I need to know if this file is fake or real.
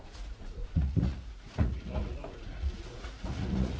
fake